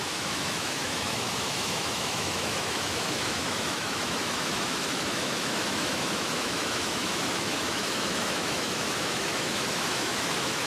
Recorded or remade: remade